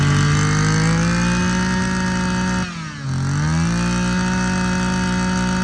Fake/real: real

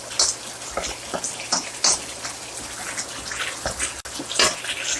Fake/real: real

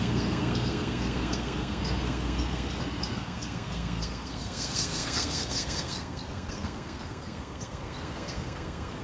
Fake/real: fake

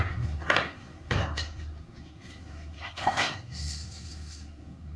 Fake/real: fake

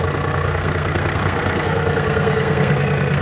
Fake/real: fake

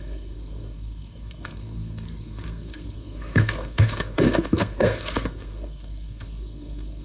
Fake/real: fake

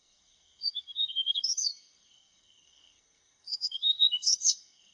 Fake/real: fake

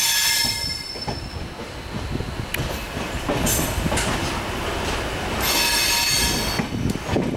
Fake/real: real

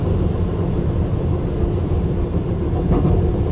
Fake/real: real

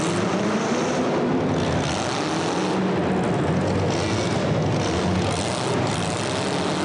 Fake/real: real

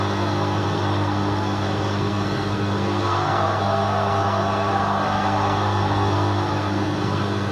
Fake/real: fake